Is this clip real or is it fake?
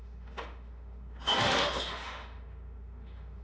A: fake